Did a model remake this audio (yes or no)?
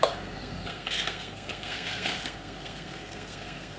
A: yes